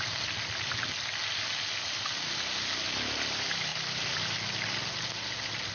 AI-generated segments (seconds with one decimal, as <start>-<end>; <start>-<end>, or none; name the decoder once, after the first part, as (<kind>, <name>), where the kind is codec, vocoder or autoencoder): none